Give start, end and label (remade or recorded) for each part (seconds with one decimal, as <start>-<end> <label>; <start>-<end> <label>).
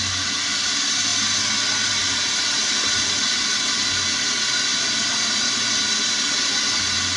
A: 0.0-7.2 recorded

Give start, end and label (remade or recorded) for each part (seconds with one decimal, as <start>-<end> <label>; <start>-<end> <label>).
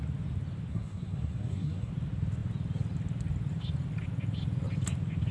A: 0.0-0.7 recorded; 0.7-1.9 remade; 1.9-5.3 recorded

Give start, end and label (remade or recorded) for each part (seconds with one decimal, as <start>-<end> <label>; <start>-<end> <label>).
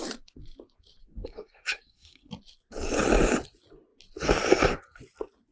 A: 0.0-1.0 recorded; 1.0-2.3 remade; 2.3-5.5 recorded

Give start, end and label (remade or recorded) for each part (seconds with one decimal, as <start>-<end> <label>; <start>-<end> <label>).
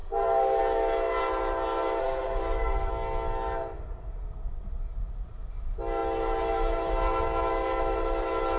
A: 0.0-0.6 remade; 0.6-2.0 recorded; 2.0-2.9 remade; 2.9-8.6 recorded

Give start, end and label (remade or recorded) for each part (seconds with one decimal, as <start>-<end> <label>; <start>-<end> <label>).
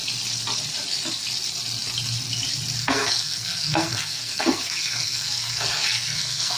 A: 0.0-2.8 recorded; 2.8-6.6 remade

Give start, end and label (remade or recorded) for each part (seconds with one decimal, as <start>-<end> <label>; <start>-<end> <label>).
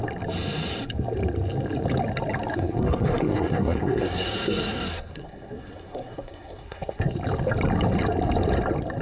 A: 0.0-2.5 recorded; 2.5-7.0 remade; 7.0-9.0 recorded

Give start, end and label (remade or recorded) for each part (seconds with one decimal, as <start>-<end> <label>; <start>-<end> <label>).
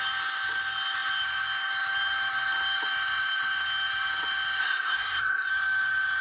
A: 0.0-4.6 recorded; 4.6-5.5 remade; 5.5-6.2 recorded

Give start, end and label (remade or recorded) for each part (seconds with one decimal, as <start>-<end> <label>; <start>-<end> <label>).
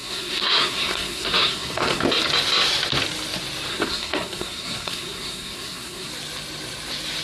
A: 0.0-2.0 remade; 2.0-3.7 recorded; 3.7-6.1 remade; 6.1-7.2 recorded